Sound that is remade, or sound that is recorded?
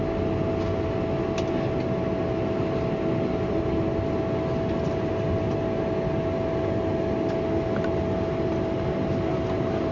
recorded